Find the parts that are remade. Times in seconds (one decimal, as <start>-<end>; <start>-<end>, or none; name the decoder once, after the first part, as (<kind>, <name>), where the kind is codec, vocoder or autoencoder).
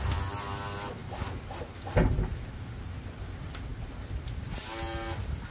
3.7-4.6 (vocoder, BigVGAN v2)